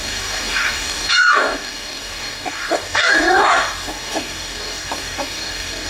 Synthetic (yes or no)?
yes